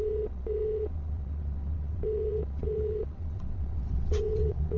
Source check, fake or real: fake